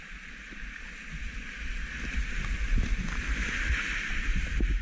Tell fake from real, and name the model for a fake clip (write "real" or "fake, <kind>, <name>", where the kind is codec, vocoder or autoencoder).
real